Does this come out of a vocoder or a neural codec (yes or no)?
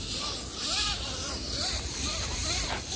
no